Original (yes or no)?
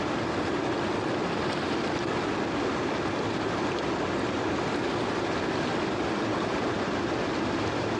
yes